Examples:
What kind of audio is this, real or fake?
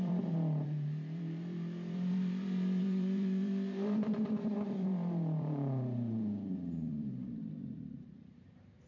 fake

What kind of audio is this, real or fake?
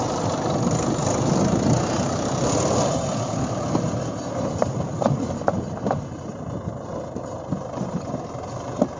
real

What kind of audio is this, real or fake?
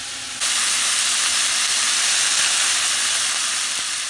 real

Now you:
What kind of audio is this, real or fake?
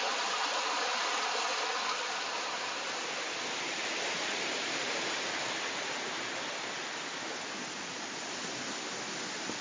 real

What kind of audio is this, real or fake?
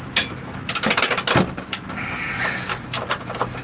real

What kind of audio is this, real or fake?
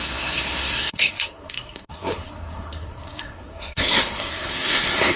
fake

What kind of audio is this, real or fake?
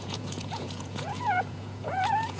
fake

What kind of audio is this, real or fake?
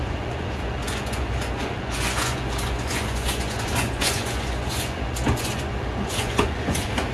fake